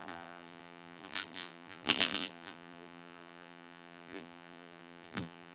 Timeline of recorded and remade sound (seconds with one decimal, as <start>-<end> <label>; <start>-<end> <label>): 0.0-5.5 remade